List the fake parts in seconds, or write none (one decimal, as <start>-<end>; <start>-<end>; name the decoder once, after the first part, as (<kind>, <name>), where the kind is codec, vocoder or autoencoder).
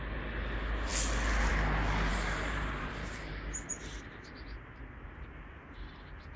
2.1-3.3 (vocoder, BigVGAN v2)